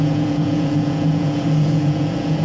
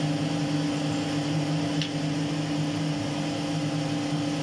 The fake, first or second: first